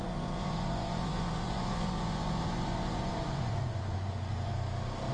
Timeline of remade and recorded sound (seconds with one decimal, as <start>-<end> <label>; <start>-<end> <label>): 0.0-4.5 remade; 4.5-5.1 recorded